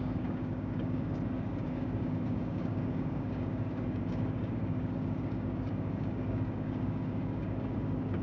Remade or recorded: remade